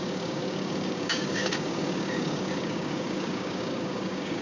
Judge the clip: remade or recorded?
remade